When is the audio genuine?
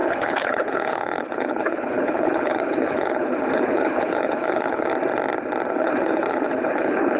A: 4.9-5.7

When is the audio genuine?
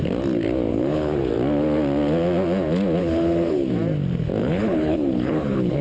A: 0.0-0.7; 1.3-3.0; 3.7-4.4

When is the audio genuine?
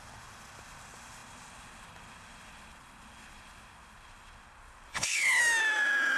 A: 0.0-4.9; 5.4-6.2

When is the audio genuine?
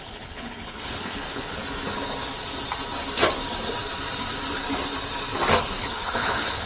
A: 1.6-5.6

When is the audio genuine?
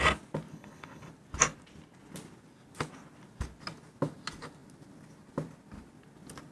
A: 0.0-0.5; 1.1-6.5